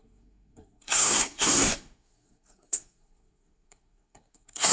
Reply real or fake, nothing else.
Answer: fake